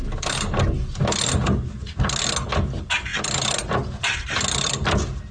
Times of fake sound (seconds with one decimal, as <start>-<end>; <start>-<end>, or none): none